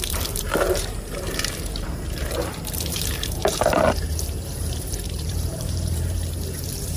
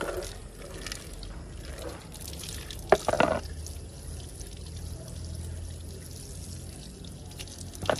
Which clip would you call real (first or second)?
second